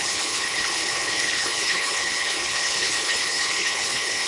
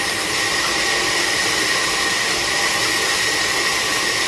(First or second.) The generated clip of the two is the first